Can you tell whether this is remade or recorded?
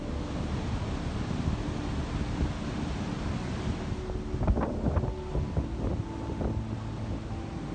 recorded